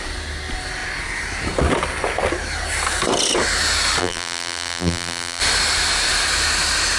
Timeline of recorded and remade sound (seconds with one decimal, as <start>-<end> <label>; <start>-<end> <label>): 0.0-4.0 recorded; 4.0-5.4 remade; 5.4-7.0 recorded